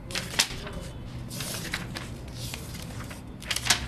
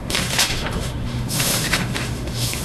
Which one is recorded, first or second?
first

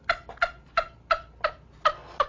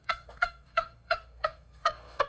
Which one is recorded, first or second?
first